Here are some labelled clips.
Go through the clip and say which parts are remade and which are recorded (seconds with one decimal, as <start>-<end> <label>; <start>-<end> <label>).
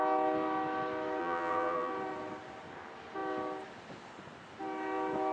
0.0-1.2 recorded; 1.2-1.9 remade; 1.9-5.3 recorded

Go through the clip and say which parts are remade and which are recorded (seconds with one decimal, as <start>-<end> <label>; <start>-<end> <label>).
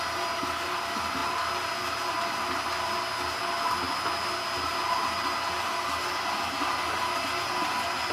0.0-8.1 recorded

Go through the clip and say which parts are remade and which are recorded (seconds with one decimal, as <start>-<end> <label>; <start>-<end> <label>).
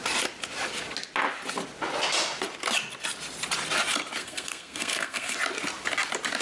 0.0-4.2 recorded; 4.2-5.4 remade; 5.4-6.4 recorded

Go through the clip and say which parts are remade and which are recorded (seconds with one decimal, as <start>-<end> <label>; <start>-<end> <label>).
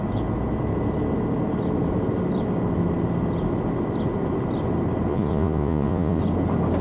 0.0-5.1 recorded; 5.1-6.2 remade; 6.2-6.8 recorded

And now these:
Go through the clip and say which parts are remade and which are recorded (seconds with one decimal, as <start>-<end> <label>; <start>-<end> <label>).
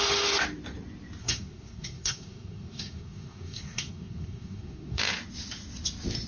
0.0-1.2 recorded; 1.2-5.0 remade; 5.0-6.3 recorded